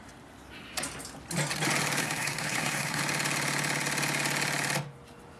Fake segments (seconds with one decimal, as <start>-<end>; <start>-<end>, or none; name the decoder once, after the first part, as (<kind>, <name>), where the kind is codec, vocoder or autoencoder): 2.0-3.0 (codec, SNAC)